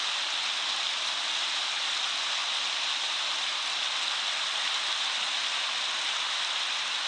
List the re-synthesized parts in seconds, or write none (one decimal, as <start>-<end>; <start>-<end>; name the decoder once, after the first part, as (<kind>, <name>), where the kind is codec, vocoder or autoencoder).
none